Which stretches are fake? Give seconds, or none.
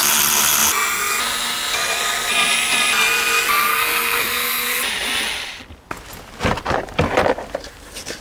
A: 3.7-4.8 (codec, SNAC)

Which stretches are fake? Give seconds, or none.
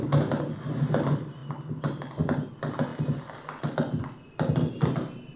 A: none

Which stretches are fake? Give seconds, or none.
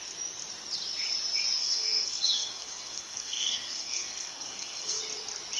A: 1.6-5.0 (codec, SNAC)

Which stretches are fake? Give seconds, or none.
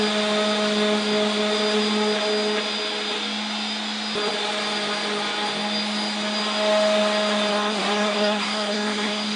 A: 7.5-9.4 (codec, SNAC)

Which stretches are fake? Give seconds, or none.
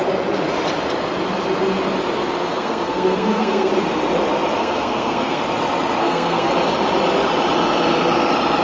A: 2.5-3.7 (codec, SNAC); 4.6-5.4; 6.0-6.5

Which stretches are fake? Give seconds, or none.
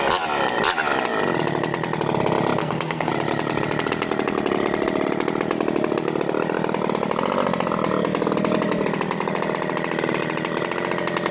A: 2.6-3.1 (codec, SNAC)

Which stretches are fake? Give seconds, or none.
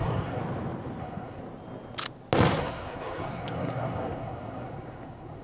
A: 0.0-0.4 (codec, SNAC); 1.0-1.4; 2.6-5.4